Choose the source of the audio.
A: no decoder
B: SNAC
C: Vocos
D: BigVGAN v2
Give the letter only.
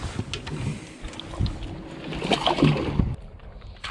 A